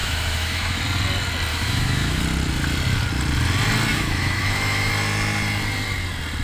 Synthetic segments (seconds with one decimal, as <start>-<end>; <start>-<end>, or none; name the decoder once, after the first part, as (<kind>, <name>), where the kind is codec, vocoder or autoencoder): 0.0-0.8 (autoencoder, DAC-VAE); 1.5-2.2; 3.9-4.9